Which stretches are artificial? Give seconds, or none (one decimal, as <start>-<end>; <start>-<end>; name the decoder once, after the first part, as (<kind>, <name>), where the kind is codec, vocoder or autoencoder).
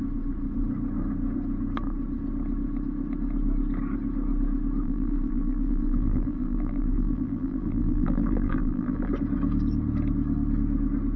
4.8-9.1 (vocoder, BigVGAN v2)